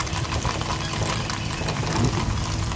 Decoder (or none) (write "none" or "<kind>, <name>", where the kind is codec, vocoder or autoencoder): none